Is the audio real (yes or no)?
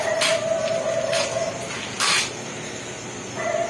yes